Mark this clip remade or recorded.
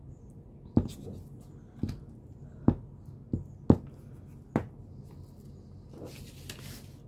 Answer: recorded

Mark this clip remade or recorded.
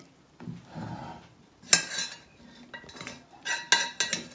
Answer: recorded